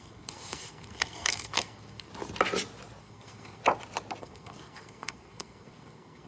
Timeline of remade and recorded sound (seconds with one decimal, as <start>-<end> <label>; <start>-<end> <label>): 0.0-2.1 remade; 2.1-3.0 recorded; 3.0-3.6 remade; 3.6-4.2 recorded; 4.2-6.3 remade